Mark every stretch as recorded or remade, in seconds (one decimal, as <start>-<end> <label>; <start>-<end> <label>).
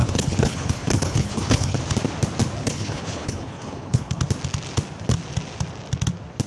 0.0-1.8 remade; 1.8-2.6 recorded; 2.6-4.2 remade; 4.2-6.5 recorded